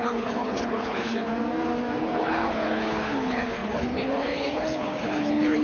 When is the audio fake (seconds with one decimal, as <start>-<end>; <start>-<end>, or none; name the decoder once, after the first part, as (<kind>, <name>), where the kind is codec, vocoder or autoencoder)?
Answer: 0.0-1.3 (codec, HILCodec); 2.0-5.6